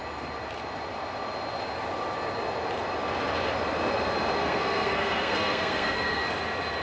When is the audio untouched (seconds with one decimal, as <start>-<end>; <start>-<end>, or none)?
0.0-4.4; 6.2-6.8